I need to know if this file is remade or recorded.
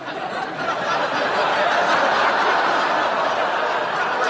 recorded